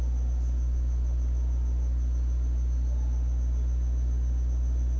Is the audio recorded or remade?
recorded